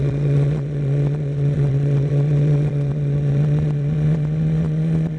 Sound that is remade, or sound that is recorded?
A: remade